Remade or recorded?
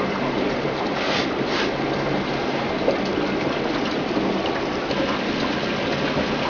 recorded